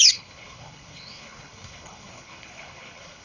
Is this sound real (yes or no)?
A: no